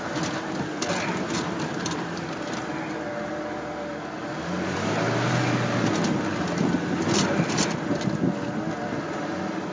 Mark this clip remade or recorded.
recorded